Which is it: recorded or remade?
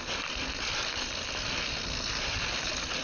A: recorded